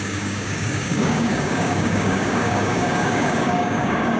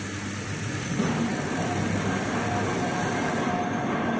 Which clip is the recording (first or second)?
second